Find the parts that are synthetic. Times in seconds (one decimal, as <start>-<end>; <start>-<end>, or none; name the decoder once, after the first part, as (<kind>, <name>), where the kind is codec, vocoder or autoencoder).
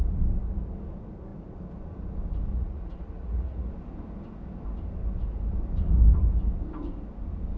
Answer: 2.5-3.7 (vocoder, Vocos)